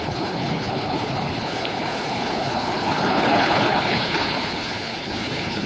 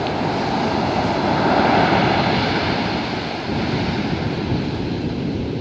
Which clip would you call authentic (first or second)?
second